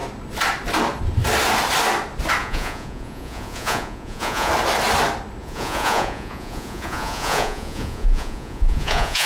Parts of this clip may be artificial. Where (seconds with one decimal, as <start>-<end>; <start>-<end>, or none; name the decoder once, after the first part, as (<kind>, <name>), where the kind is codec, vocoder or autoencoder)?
2.4-4.5 (vocoder, Vocos); 5.4-9.3